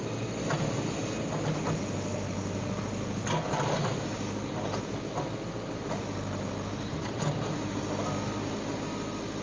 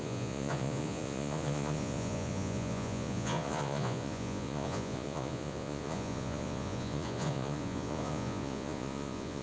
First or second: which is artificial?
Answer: second